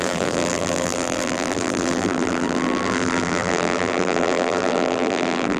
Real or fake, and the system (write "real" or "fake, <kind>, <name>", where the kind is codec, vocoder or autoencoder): fake, vocoder, BigVGAN v2